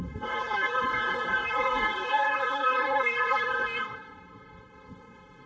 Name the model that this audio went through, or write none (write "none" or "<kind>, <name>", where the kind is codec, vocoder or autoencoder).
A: codec, SNAC